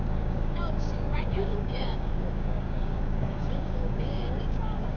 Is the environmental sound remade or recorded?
remade